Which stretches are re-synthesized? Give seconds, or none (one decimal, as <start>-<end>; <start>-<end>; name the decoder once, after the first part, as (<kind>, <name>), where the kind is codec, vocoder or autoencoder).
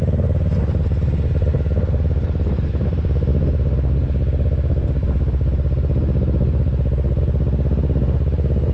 none